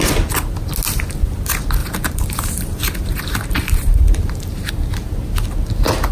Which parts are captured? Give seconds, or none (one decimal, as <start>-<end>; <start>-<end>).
0.0-1.8; 4.7-6.1